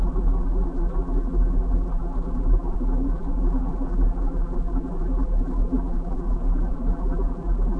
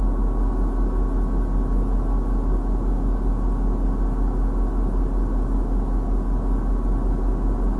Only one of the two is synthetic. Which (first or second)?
first